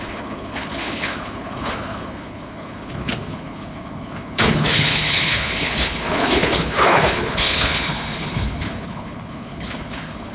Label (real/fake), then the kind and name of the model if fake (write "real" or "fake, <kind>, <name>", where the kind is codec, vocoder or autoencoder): fake, codec, HILCodec